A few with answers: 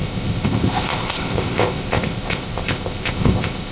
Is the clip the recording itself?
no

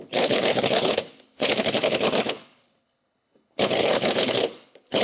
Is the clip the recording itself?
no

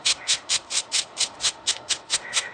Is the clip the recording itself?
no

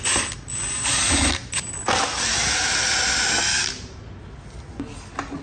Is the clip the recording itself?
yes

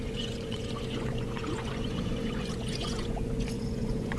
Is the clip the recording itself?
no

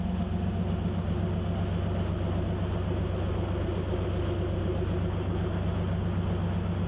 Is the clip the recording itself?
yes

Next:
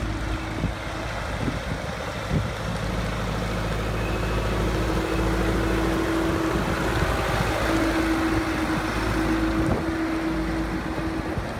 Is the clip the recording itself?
yes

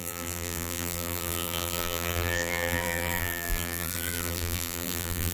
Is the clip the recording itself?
no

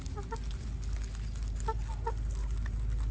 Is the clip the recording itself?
yes